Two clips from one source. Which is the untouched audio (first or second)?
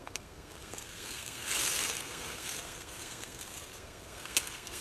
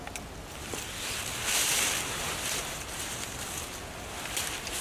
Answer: second